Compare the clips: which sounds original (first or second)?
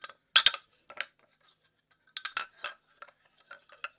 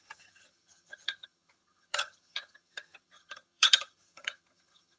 first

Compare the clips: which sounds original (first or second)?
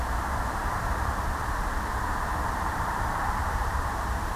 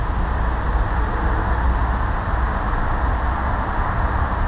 second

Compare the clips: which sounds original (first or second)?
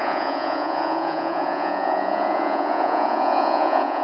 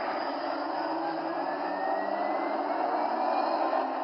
second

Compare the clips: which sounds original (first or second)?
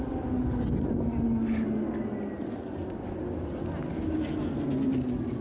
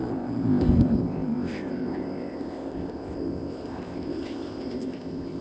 first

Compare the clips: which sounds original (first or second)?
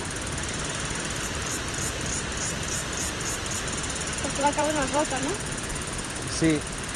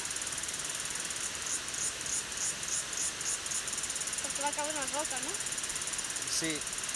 second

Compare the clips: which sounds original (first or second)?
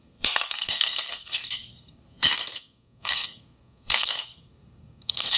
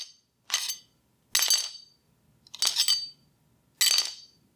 second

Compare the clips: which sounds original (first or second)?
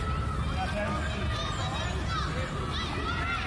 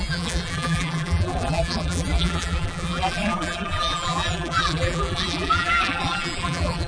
first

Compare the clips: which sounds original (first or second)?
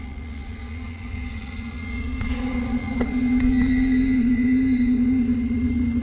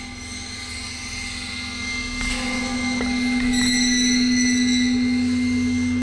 second